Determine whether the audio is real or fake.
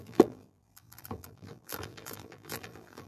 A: fake